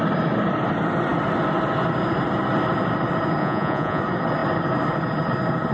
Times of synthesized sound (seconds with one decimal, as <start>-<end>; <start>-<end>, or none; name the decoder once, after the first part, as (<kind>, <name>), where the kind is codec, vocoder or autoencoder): 3.4-4.0 (vocoder, Vocos)